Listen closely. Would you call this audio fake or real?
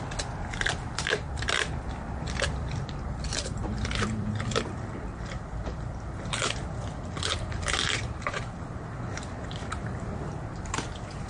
fake